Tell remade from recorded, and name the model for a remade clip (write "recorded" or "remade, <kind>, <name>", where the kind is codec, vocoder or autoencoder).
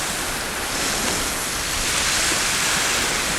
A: recorded